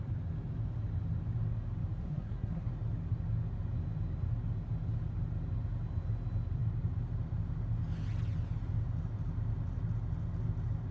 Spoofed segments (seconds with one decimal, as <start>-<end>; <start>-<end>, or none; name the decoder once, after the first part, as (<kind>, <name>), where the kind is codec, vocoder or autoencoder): 2.0-2.7 (codec, SNAC)